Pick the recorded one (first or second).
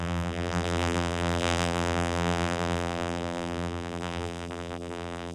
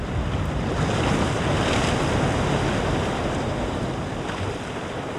second